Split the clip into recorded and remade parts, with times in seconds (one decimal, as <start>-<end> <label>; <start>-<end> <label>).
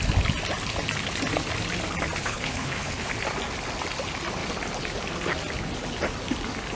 0.0-2.2 recorded; 2.2-3.1 remade; 3.1-6.8 recorded